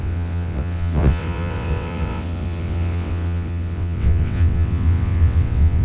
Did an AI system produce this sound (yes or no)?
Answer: yes